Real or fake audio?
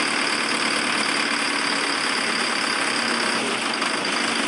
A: real